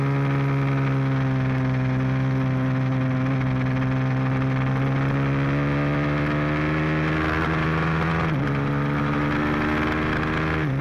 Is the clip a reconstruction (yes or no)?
no